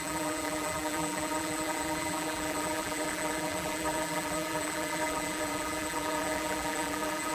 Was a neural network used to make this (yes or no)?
yes